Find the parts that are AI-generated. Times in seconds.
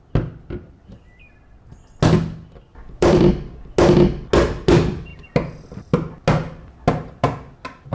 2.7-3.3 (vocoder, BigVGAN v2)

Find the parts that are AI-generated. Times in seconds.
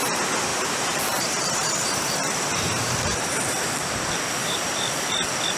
0.5-3.9 (vocoder, BigVGAN v2); 4.4-5.0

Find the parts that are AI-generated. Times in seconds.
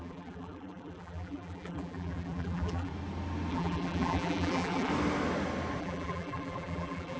0.0-2.9 (vocoder, BigVGAN v2); 3.5-4.9; 5.8-7.2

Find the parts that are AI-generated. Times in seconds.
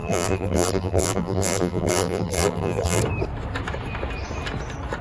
0.0-3.0 (vocoder, BigVGAN v2)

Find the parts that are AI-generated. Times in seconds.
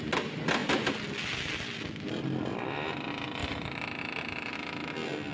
3.4-4.5 (vocoder, BigVGAN v2)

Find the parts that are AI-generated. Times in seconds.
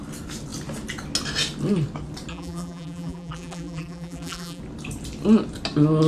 2.3-4.6 (vocoder, BigVGAN v2)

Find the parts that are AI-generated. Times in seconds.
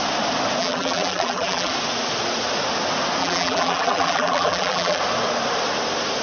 0.6-1.7 (vocoder, BigVGAN v2); 3.2-5.0